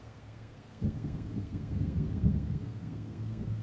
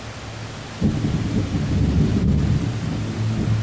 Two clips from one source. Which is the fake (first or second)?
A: first